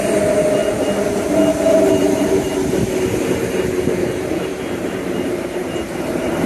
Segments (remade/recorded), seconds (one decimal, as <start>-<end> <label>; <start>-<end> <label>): 0.0-2.0 recorded; 2.0-2.5 remade; 2.5-4.5 recorded; 4.5-6.5 remade